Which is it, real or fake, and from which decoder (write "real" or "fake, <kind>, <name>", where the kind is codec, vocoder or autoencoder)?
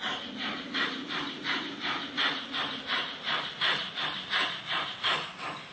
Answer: real